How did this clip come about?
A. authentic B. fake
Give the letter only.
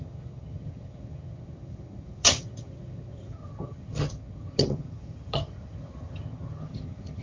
B